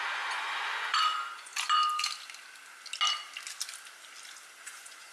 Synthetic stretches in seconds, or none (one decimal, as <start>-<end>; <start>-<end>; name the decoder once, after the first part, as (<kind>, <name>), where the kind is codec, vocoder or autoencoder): 0.0-1.5 (vocoder, Vocos); 4.6-5.1